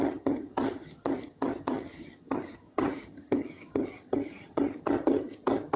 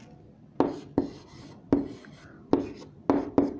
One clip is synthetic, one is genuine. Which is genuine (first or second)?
second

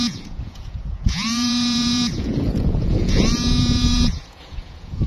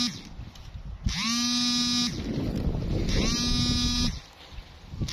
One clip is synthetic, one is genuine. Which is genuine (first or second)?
second